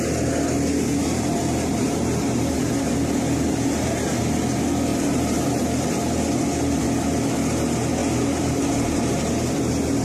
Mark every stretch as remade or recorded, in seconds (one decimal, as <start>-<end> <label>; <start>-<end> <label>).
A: 0.0-1.0 recorded; 1.0-4.2 remade; 4.2-4.9 recorded; 4.9-5.6 remade; 5.6-8.0 recorded; 8.0-9.1 remade; 9.1-10.0 recorded